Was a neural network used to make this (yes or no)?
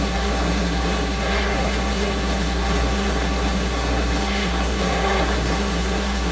yes